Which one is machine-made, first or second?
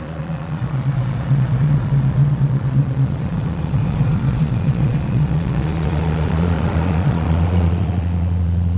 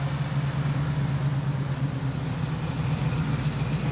first